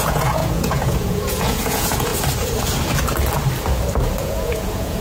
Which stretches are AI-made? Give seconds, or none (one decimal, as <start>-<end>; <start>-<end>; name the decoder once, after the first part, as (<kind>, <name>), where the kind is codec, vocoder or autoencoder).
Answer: 0.0-2.1 (vocoder, Vocos); 4.2-5.0